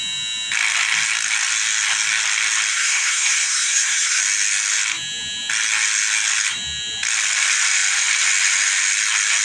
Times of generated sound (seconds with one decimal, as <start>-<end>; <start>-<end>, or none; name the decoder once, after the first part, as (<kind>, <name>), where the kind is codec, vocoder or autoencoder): 2.7-4.2 (codec, SNAC)